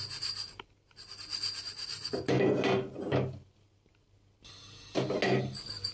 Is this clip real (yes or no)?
yes